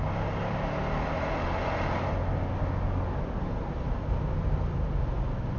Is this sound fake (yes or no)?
no